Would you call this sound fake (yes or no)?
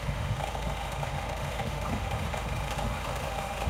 yes